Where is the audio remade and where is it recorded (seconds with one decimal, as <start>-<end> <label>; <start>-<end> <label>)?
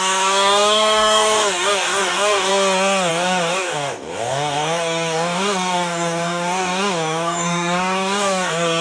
0.0-2.5 remade; 2.5-3.1 recorded; 3.1-8.8 remade